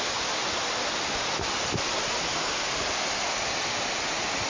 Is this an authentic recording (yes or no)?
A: yes